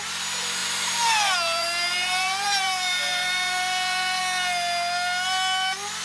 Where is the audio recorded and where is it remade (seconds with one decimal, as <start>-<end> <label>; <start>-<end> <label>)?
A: 0.0-0.6 recorded; 0.6-4.2 remade; 4.2-6.0 recorded